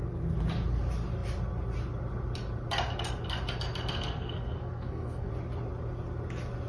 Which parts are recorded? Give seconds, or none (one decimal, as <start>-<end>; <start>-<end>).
0.0-3.9; 5.3-6.7